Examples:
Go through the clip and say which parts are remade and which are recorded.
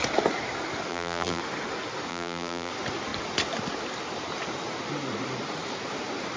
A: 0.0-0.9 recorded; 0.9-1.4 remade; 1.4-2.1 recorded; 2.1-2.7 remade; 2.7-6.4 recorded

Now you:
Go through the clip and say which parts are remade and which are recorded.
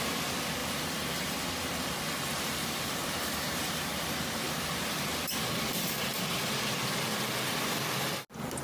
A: 0.0-0.6 recorded; 0.6-1.4 remade; 1.4-2.3 recorded; 2.3-6.4 remade; 6.4-8.6 recorded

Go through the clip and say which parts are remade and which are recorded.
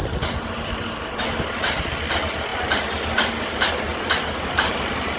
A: 0.0-1.4 remade; 1.4-2.5 recorded; 2.5-3.3 remade; 3.3-3.9 recorded; 3.9-4.7 remade; 4.7-5.2 recorded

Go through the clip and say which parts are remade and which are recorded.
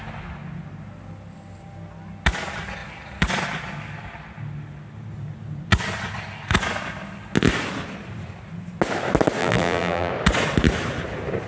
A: 0.0-9.4 recorded; 9.4-10.1 remade; 10.1-11.5 recorded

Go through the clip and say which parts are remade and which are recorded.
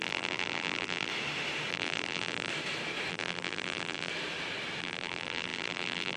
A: 0.0-1.1 remade; 1.1-1.7 recorded; 1.7-2.5 remade; 2.5-3.1 recorded; 3.1-4.1 remade; 4.1-4.8 recorded; 4.8-6.2 remade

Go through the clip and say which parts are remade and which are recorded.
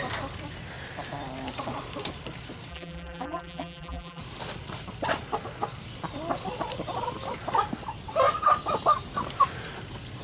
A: 0.0-2.7 recorded; 2.7-4.2 remade; 4.2-10.2 recorded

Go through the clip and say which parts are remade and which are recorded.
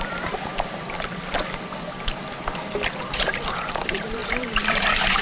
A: 0.0-0.5 remade; 0.5-3.0 recorded; 3.0-5.2 remade